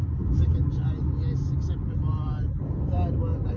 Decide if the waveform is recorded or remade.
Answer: recorded